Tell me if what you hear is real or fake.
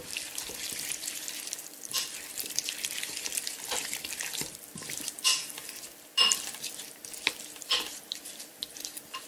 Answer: fake